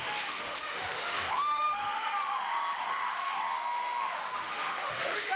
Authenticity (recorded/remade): remade